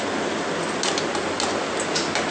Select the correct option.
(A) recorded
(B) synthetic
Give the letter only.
A